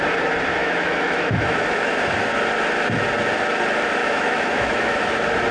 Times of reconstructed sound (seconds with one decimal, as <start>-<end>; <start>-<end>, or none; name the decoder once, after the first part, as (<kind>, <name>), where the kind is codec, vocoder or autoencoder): 0.6-1.9 (autoencoder, DAC-VAE); 4.0-5.0